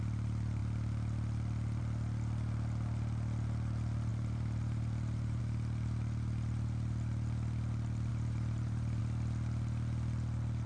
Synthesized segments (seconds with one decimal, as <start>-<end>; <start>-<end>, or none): 4.1-5.4; 8.1-9.0